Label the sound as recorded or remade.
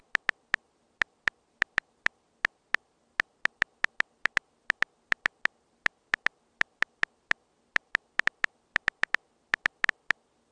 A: recorded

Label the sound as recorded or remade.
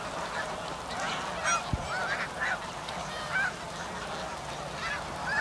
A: recorded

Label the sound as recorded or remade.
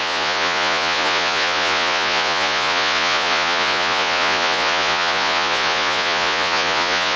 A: remade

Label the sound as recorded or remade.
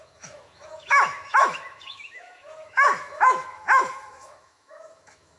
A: remade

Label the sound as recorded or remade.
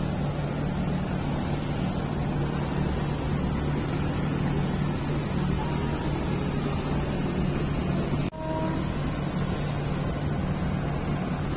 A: recorded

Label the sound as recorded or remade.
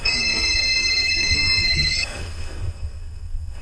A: remade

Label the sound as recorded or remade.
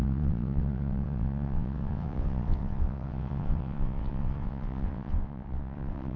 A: remade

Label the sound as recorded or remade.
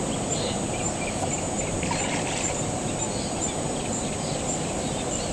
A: recorded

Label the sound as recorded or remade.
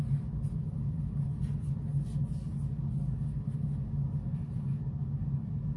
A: recorded